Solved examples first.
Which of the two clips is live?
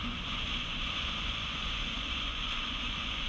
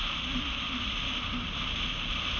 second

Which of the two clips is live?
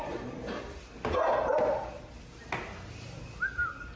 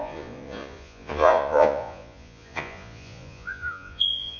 first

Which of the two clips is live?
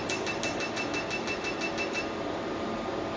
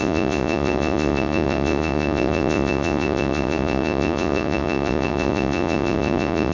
first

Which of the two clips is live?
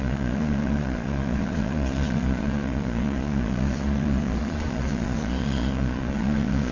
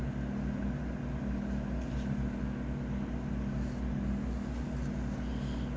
second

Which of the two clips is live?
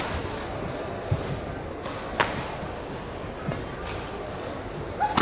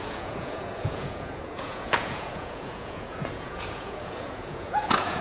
first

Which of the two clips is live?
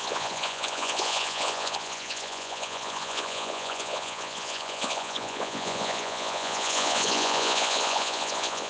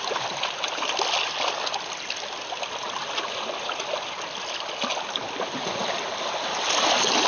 second